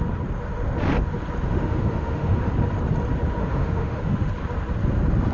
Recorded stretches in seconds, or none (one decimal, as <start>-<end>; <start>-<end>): 0.0-1.5; 2.5-3.4; 4.3-5.3